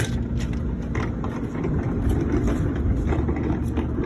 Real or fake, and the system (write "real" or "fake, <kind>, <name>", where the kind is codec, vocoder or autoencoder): real